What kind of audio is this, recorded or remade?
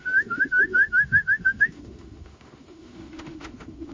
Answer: remade